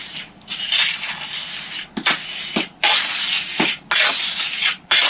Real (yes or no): yes